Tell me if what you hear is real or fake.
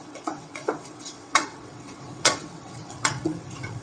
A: fake